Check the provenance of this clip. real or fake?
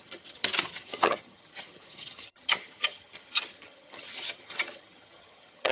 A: fake